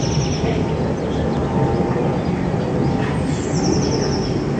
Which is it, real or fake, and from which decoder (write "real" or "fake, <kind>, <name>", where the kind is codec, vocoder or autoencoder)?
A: real